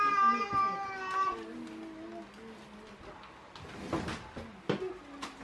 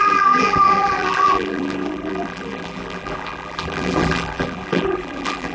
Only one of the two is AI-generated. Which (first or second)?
second